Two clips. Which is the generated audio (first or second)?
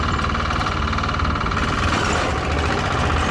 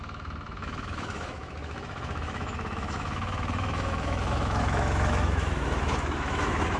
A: second